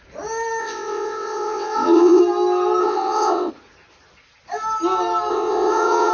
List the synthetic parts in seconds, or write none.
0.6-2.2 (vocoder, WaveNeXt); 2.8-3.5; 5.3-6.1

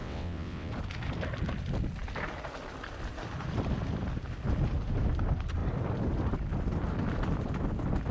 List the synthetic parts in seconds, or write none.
0.0-0.7 (vocoder, WaveNeXt)

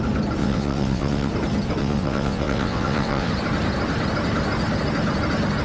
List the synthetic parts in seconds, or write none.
0.4-1.3 (vocoder, WaveNeXt); 1.8-3.3